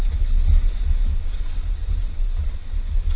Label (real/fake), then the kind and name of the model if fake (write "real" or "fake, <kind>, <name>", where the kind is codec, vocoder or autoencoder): real